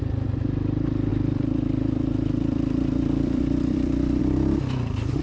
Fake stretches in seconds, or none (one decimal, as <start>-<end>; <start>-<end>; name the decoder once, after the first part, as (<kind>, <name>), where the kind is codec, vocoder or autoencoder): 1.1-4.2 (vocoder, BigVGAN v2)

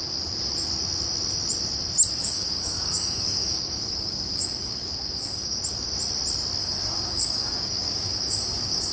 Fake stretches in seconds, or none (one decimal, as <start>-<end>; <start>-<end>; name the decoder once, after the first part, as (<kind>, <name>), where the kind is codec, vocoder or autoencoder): 2.2-5.6 (codec, DAC); 6.6-8.9

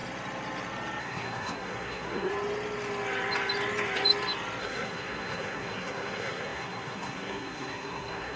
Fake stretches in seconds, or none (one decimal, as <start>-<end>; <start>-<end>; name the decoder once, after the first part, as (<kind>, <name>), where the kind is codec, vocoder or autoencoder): 1.0-2.3 (codec, SNAC); 4.6-8.4